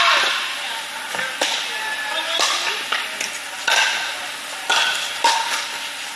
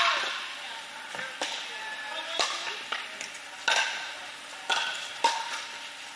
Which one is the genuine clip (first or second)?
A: first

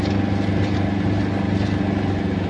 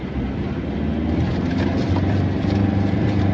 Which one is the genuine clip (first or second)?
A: first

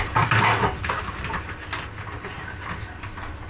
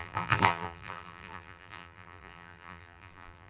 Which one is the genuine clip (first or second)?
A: first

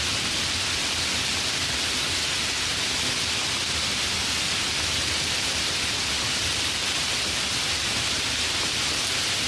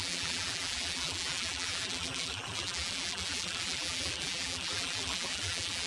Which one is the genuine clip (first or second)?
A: first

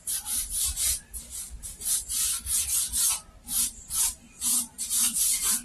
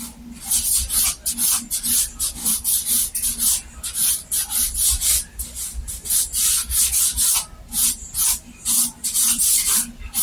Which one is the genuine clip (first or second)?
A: second